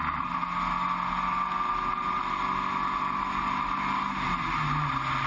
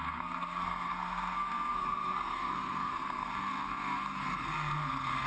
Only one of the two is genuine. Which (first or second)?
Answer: first